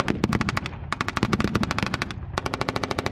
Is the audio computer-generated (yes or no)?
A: no